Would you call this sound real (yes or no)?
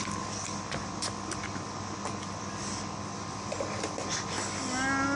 yes